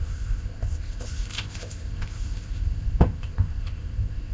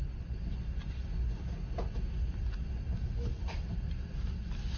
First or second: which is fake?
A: first